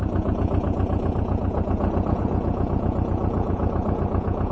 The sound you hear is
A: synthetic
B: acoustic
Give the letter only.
A